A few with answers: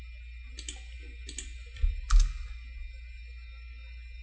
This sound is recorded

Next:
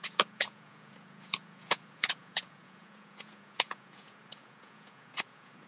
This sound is remade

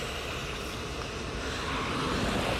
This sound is recorded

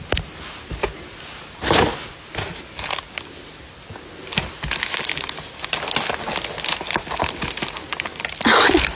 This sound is recorded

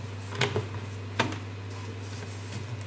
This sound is recorded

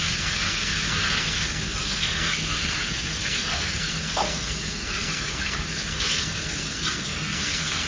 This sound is remade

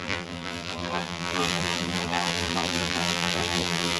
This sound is remade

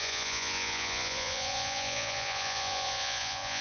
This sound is remade